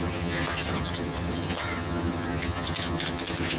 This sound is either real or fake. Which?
fake